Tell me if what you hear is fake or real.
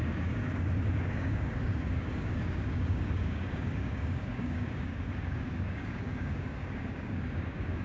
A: fake